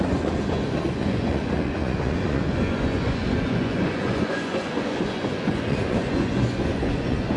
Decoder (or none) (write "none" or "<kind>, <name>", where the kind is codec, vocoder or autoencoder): vocoder, Vocos